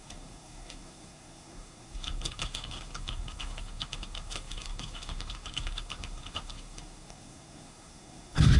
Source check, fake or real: fake